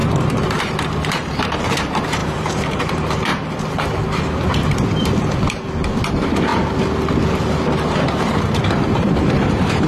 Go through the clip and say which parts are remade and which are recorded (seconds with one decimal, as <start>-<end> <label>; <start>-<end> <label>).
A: 0.0-3.3 remade; 3.3-6.1 recorded; 6.1-6.5 remade; 6.5-7.5 recorded; 7.5-9.9 remade